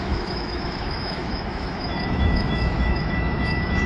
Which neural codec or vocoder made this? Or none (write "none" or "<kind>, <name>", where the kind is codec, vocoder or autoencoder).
autoencoder, DAC-VAE